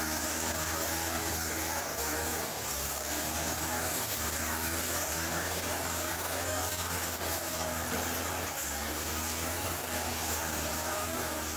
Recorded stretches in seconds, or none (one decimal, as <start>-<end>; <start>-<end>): 7.8-8.4